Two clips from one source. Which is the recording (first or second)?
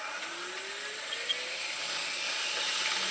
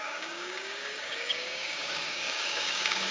first